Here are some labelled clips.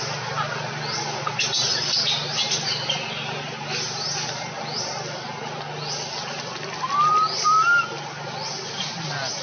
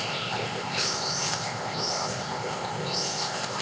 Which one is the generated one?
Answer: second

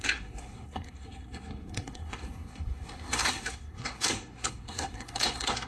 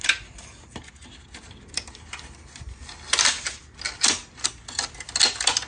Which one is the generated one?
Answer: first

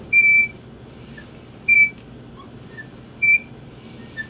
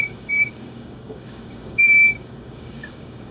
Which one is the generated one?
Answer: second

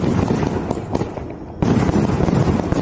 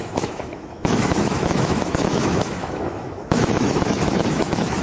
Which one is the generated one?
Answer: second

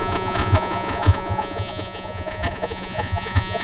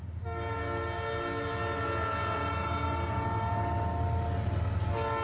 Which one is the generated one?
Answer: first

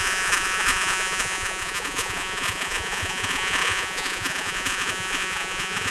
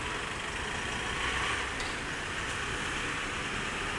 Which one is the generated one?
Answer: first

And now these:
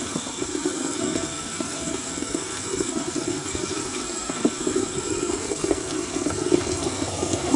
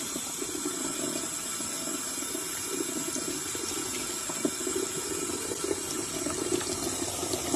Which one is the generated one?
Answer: first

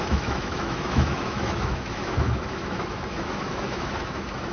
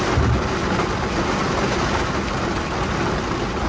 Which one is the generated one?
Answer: first